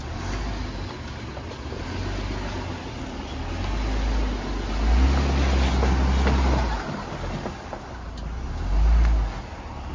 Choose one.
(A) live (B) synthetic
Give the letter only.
A